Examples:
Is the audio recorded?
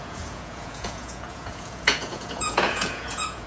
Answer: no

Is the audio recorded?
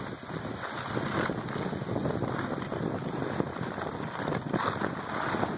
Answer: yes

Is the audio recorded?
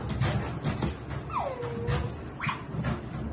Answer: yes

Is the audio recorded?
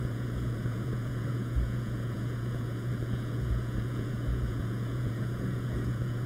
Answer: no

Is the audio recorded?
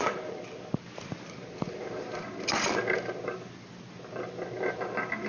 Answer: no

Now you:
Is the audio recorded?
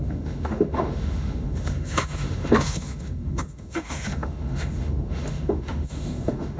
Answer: no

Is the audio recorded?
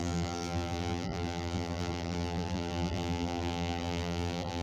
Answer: no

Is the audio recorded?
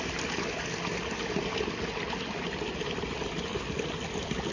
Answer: yes